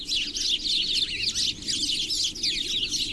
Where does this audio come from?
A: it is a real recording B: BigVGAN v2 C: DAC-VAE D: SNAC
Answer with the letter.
A